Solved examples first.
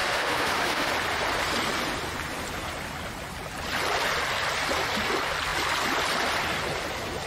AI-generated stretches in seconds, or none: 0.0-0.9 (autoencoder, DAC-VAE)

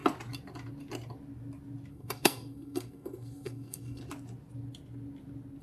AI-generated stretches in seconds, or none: 1.9-4.0 (codec, SNAC)

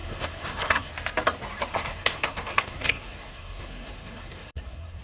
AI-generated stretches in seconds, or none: 0.0-0.9 (codec, SNAC); 1.7-5.0

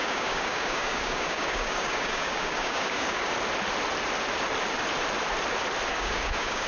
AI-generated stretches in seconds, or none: 0.0-3.3 (codec, DAC); 5.9-6.7

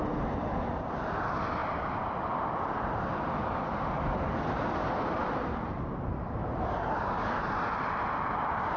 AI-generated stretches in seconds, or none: 1.6-2.8 (vocoder, BigVGAN v2)

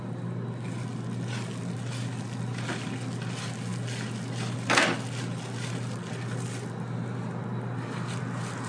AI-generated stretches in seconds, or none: none